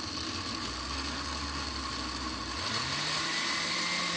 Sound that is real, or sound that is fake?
real